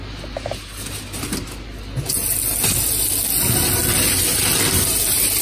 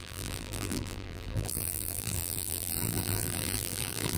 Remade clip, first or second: second